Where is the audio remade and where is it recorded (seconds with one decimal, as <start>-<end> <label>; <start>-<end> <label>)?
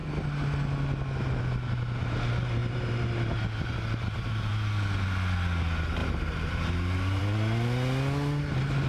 0.0-2.6 recorded; 2.6-4.5 remade; 4.5-6.0 recorded; 6.0-7.2 remade; 7.2-8.9 recorded